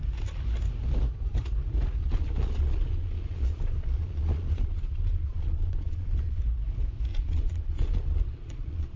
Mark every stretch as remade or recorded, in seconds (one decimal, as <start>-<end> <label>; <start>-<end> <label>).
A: 0.0-2.0 recorded; 2.0-6.4 remade; 6.4-7.1 recorded; 7.1-9.0 remade